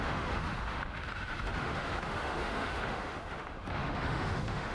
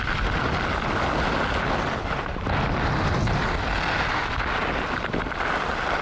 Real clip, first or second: second